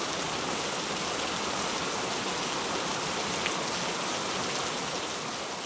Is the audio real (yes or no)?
yes